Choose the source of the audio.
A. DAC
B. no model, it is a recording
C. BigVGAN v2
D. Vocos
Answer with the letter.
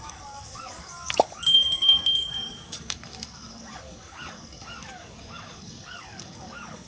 A